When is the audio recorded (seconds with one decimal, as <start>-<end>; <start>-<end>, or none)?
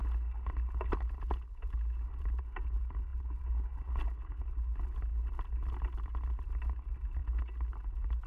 0.0-8.3